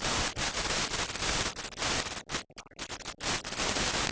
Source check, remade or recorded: recorded